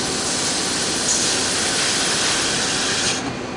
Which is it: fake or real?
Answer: real